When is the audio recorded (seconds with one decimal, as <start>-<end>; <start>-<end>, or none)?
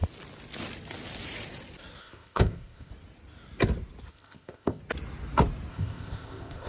0.0-2.0; 2.9-4.1; 4.8-5.7